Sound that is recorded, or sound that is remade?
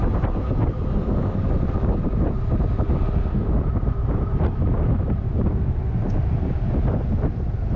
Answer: recorded